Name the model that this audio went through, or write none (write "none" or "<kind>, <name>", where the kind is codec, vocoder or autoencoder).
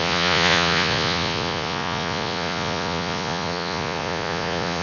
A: vocoder, Vocos